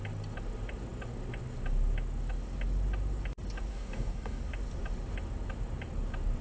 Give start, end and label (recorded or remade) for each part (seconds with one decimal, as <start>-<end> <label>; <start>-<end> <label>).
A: 0.0-3.7 recorded; 3.7-4.4 remade; 4.4-6.4 recorded